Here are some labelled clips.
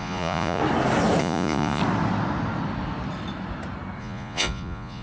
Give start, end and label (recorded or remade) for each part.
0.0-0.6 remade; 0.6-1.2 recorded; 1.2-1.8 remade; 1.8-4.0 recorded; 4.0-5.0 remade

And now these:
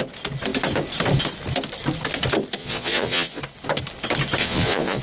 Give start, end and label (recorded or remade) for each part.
0.0-2.6 recorded; 2.6-3.4 remade; 3.4-4.4 recorded; 4.4-5.0 remade

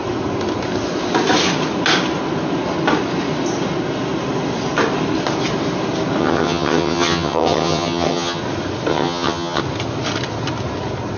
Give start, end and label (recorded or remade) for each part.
0.0-6.2 recorded; 6.2-8.4 remade; 8.4-8.9 recorded; 8.9-9.6 remade; 9.6-11.2 recorded

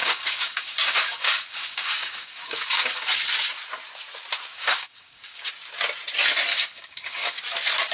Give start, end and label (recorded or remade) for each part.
0.0-3.1 remade; 3.1-4.5 recorded; 4.5-5.5 remade; 5.5-6.5 recorded; 6.5-7.4 remade; 7.4-7.9 recorded

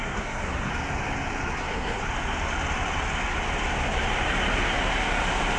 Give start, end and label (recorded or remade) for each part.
0.0-0.7 remade; 0.7-1.6 recorded; 1.6-2.0 remade; 2.0-5.6 recorded

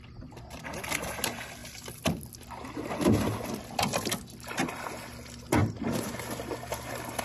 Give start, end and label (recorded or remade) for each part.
0.0-7.2 recorded

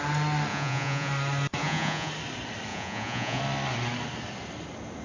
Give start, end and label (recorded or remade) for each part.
0.0-0.5 recorded; 0.5-1.1 remade; 1.1-1.6 recorded; 1.6-2.1 remade; 2.1-2.7 recorded; 2.7-3.4 remade; 3.4-5.0 recorded